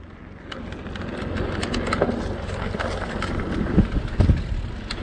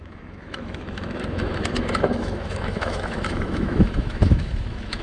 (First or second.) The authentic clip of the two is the first